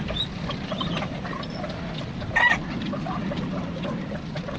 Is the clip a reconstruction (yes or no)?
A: no